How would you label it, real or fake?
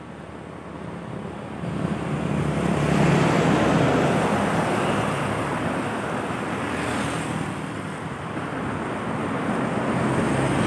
real